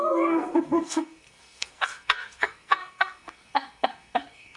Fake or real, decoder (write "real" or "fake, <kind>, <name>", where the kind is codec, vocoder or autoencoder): fake, codec, SNAC